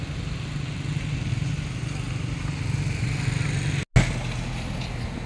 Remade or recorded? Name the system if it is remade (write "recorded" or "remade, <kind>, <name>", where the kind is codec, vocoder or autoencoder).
recorded